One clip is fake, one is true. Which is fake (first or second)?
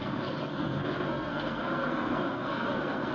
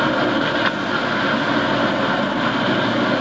first